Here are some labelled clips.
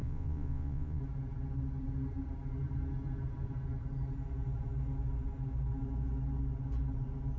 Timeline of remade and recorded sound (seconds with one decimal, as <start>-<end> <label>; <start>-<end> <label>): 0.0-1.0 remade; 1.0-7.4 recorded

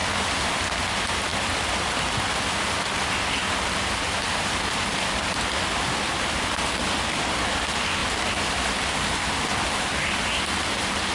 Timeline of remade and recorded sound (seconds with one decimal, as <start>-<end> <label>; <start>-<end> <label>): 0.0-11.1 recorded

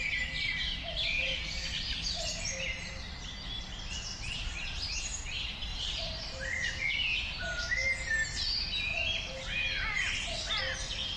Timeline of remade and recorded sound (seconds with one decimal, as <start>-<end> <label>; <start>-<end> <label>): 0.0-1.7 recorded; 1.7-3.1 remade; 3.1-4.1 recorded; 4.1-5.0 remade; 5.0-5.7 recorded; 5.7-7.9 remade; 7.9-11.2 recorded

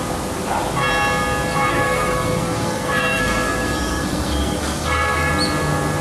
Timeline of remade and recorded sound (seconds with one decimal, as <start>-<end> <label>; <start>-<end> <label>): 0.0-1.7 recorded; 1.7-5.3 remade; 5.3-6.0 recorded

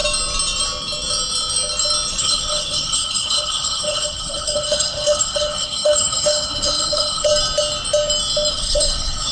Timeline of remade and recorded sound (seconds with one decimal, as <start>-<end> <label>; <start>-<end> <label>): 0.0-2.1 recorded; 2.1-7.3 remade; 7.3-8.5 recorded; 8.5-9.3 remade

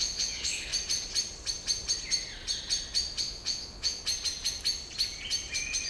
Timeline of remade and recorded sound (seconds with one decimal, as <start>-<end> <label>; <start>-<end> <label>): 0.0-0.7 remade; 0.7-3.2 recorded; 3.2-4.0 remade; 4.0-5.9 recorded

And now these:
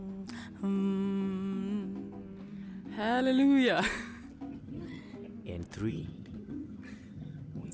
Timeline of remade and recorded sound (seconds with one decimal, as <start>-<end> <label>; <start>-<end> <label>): 0.0-4.6 recorded; 4.6-5.0 remade; 5.0-5.9 recorded; 5.9-7.7 remade

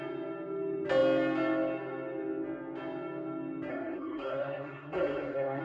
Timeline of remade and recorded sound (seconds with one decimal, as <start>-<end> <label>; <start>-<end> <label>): 0.0-3.7 recorded; 3.7-5.6 remade